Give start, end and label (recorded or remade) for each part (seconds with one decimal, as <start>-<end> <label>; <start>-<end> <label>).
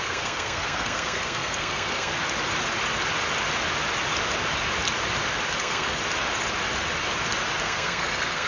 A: 0.0-2.1 remade; 2.1-5.5 recorded; 5.5-6.0 remade; 6.0-7.6 recorded; 7.6-8.5 remade